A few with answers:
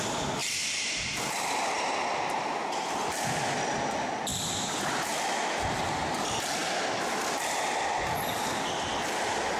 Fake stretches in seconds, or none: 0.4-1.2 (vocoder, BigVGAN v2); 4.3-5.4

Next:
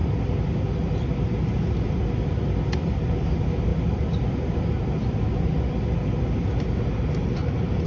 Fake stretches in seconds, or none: 0.0-1.3 (vocoder, BigVGAN v2); 3.7-5.7

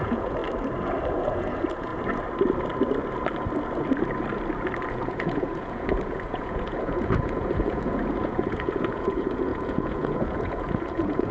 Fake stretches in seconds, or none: 0.0-0.4 (vocoder, Vocos); 1.1-1.9; 4.9-11.3

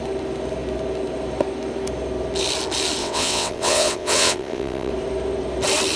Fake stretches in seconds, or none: 3.0-4.9 (vocoder, WaveNeXt)

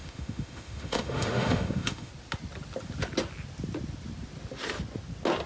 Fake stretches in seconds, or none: 0.0-2.1 (autoencoder, DAC-VAE)

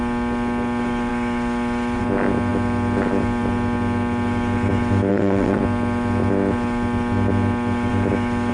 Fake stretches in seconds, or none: 5.1-5.6 (vocoder, WaveNeXt)

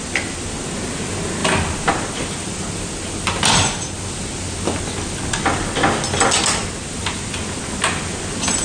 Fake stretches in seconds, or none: none